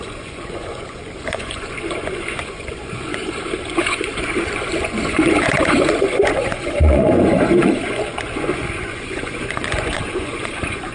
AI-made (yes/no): yes